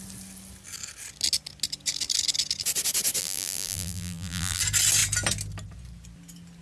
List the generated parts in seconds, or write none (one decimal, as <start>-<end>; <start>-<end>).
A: 3.2-4.6